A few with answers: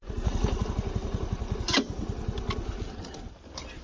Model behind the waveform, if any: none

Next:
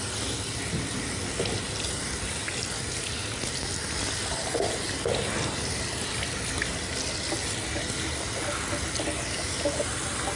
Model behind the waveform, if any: none